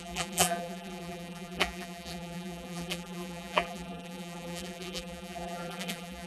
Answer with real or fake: fake